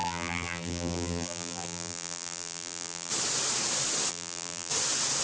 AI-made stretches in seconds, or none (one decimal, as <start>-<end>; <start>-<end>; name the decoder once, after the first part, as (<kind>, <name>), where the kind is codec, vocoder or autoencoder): 0.0-3.1 (vocoder, BigVGAN v2); 4.1-4.7